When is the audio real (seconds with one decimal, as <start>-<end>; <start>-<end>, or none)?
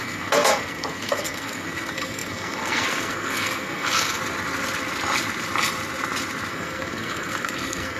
4.2-6.5